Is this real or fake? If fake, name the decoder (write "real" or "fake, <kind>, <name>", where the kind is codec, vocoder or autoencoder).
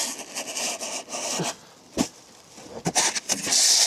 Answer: real